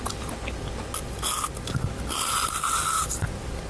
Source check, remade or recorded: recorded